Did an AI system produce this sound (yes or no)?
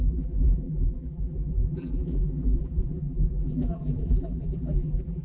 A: yes